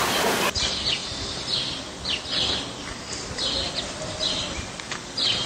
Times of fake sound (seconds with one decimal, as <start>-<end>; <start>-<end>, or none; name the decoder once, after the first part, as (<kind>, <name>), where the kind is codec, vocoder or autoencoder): none